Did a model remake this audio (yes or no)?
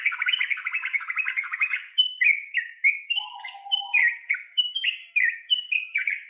yes